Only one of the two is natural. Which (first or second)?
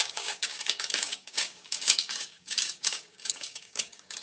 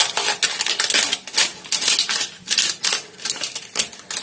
second